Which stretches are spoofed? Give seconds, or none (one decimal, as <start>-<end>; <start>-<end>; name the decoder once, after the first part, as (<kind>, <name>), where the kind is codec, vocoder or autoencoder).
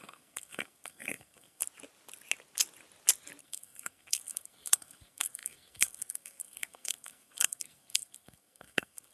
0.0-1.6 (codec, SNAC); 3.4-9.1